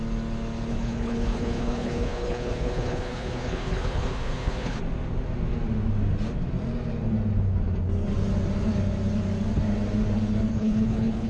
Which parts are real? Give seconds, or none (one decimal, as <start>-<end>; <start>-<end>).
0.0-0.7; 4.8-10.5